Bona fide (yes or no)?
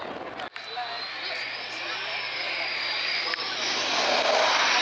yes